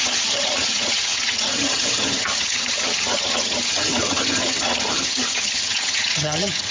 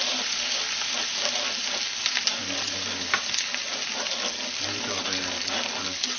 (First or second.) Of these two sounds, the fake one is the first